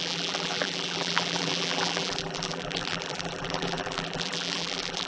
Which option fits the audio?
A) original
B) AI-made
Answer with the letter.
B